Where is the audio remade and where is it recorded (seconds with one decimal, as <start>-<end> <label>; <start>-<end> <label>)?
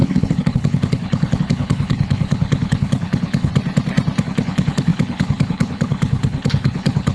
0.0-3.5 remade; 3.5-4.2 recorded; 4.2-7.1 remade